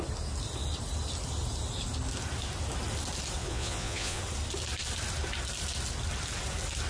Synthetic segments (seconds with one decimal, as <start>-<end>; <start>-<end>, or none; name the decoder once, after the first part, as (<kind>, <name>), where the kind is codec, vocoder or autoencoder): 3.4-4.2 (vocoder, Vocos)